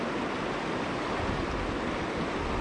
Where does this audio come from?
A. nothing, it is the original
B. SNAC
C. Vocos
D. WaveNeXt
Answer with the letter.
A